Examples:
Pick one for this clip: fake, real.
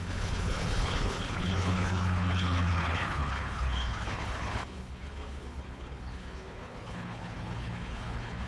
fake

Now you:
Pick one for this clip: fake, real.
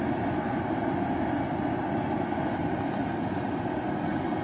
real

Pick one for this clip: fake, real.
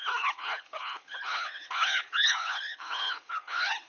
fake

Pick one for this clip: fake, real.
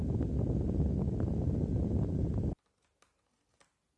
real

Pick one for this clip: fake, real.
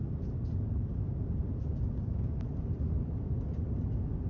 real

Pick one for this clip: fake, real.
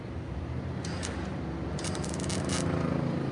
real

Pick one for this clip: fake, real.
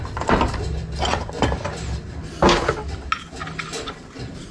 real